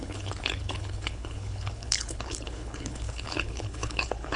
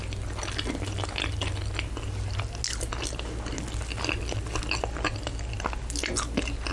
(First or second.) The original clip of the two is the second